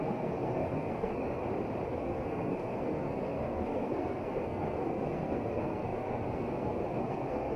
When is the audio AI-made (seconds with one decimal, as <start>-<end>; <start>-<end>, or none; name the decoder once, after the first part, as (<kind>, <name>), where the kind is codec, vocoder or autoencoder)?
0.0-1.4 (codec, SNAC); 1.9-7.6